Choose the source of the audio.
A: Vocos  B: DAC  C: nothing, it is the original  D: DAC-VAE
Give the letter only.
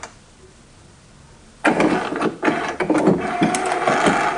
C